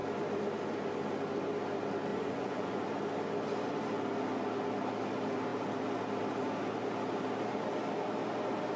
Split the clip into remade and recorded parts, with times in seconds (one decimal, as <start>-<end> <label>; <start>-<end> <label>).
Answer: 0.0-2.1 recorded; 2.1-2.8 remade; 2.8-8.8 recorded